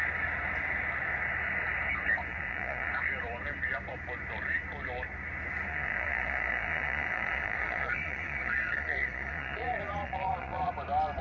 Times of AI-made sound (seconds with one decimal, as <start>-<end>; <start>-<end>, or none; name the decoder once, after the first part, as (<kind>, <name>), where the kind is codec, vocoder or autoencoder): 2.3-2.9 (vocoder, Vocos); 5.7-10.7